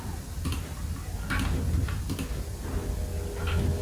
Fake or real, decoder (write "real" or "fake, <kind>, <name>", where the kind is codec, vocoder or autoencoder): real